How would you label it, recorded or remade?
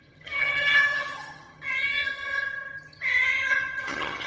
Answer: remade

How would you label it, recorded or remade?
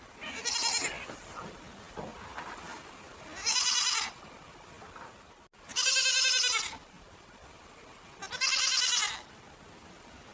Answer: recorded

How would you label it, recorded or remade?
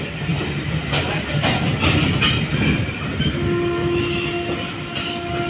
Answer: recorded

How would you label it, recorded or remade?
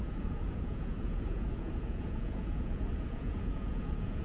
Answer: remade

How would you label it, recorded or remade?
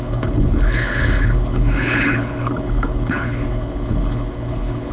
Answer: remade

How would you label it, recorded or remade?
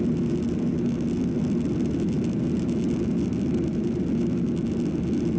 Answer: recorded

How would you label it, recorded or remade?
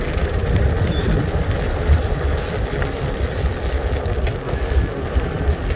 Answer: recorded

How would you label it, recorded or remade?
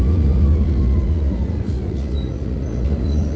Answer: remade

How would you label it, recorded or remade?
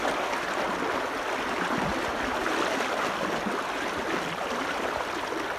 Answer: recorded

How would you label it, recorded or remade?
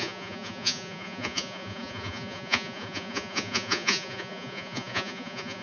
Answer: remade